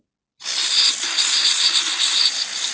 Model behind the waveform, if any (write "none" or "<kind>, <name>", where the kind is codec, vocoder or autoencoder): none